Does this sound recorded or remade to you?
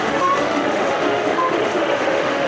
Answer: remade